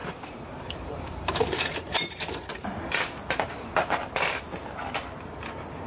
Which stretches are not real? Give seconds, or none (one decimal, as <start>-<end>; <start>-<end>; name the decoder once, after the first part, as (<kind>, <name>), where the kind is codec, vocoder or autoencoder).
0.0-4.6 (vocoder, BigVGAN v2); 5.4-5.9

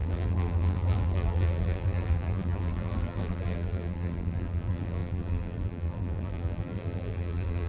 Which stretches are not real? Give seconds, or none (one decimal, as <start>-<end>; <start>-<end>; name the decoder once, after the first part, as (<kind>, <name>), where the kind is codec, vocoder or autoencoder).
0.0-7.7 (vocoder, BigVGAN v2)

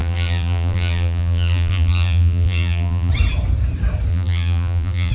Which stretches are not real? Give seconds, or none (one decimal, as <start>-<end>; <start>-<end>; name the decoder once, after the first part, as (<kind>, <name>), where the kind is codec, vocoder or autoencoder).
0.0-3.1 (vocoder, BigVGAN v2); 4.1-5.1

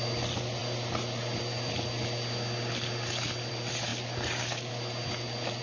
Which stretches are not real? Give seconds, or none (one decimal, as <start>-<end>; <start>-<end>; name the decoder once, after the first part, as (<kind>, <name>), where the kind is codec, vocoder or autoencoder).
none

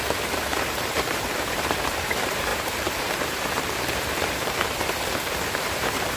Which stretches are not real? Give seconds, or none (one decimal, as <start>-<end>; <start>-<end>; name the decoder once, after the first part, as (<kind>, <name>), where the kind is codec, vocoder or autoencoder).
0.0-6.2 (vocoder, BigVGAN v2)